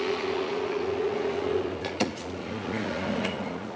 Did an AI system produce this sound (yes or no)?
yes